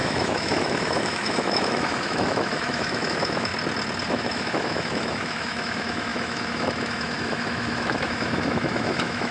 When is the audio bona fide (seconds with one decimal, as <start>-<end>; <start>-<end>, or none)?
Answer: 3.5-4.1